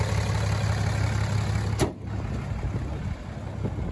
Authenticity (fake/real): real